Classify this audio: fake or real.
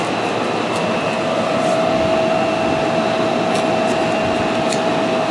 real